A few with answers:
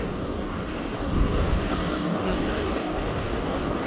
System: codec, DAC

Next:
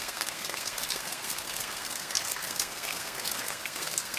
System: codec, SNAC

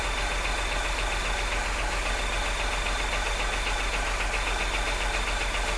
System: none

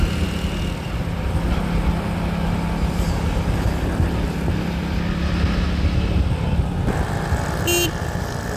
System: none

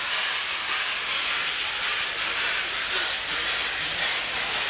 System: none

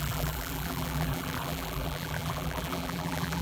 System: vocoder, BigVGAN v2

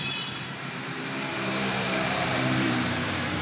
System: vocoder, BigVGAN v2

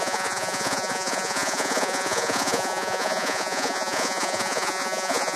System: vocoder, Vocos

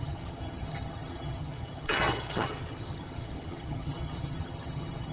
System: vocoder, HiFi-GAN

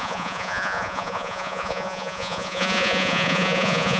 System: vocoder, Vocos